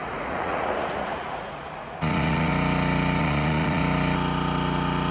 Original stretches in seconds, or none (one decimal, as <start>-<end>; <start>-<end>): 2.5-3.2; 3.8-5.1